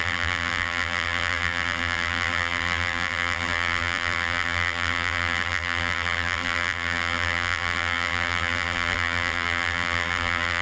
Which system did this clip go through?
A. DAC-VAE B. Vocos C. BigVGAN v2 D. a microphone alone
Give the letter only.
C